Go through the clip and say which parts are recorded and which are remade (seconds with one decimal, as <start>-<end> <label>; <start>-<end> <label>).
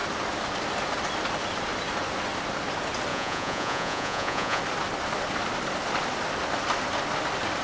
0.0-3.1 recorded; 3.1-4.6 remade; 4.6-7.6 recorded